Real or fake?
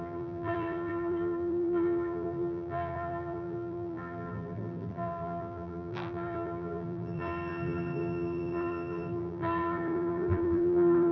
fake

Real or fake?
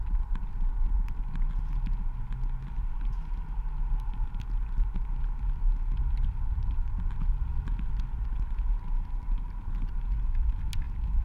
real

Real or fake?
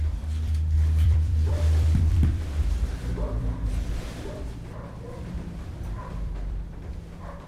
fake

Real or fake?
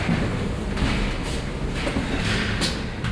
real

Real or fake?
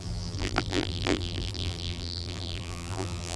fake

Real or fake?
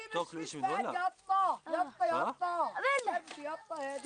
real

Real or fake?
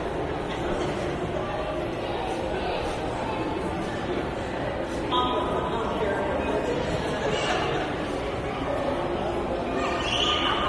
real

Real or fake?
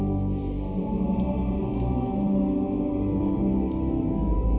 fake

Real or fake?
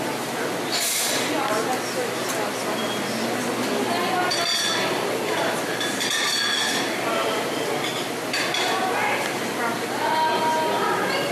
real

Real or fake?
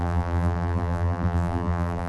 fake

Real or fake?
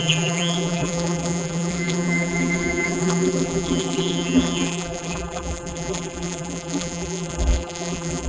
fake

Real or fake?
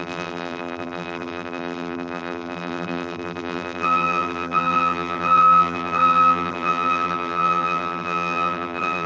fake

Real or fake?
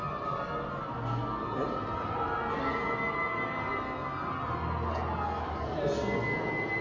real